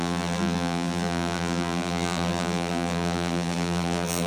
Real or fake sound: fake